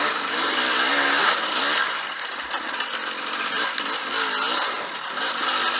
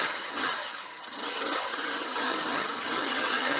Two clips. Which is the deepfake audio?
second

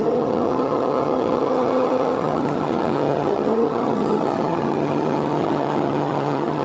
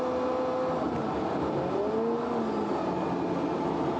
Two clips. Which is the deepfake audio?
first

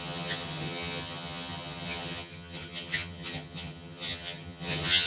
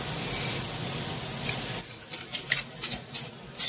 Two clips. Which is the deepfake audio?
first